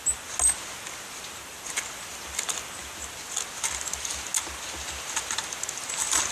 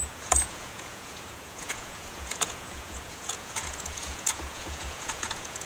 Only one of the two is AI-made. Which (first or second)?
second